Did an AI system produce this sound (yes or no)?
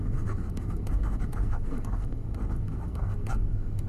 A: yes